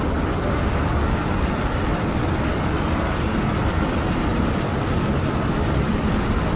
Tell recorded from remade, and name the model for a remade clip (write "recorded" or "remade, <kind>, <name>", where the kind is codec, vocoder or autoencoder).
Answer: remade, vocoder, BigVGAN v2